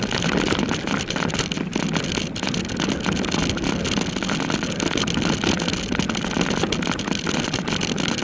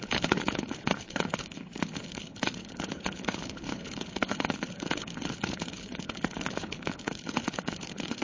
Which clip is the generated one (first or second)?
second